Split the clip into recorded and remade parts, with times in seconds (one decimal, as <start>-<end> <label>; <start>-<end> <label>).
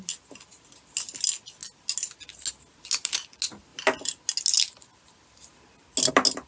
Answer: 0.0-6.5 recorded